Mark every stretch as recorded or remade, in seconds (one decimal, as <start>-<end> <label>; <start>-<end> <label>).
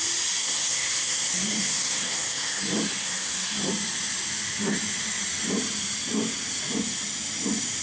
0.0-0.4 recorded; 0.4-2.6 remade; 2.6-3.0 recorded; 3.0-3.6 remade; 3.6-7.8 recorded